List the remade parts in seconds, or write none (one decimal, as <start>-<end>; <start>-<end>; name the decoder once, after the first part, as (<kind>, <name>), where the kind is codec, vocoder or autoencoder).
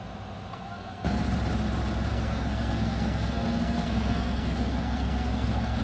0.5-1.2 (codec, SNAC); 2.1-5.8